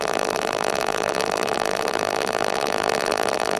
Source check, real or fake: fake